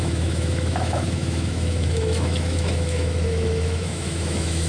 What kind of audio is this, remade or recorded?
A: remade